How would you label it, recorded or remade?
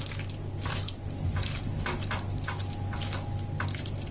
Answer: recorded